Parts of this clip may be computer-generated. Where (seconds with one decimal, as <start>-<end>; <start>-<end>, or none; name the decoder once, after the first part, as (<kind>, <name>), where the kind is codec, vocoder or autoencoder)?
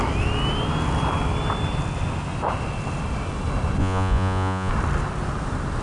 3.8-4.7 (vocoder, Vocos)